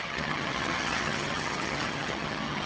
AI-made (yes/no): yes